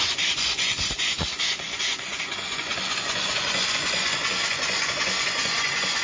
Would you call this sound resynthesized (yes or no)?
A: yes